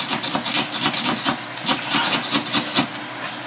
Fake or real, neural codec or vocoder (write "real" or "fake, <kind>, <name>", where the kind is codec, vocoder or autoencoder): real